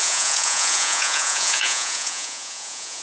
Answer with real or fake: fake